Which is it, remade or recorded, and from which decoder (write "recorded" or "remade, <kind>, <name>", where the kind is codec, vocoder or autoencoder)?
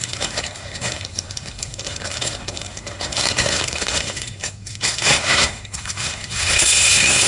remade, codec, SNAC